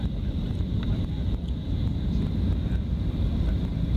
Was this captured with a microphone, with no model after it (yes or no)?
no